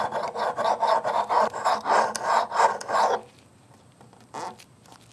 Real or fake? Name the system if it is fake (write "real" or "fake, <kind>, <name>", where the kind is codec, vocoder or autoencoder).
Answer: fake, vocoder, BigVGAN v2